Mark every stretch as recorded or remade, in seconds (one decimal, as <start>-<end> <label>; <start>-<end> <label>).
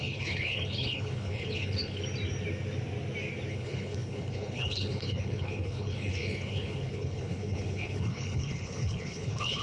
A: 0.0-2.0 remade; 2.0-3.5 recorded; 3.5-9.6 remade